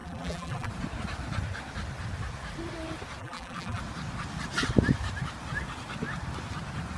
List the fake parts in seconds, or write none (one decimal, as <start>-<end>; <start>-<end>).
0.0-0.7; 3.2-3.8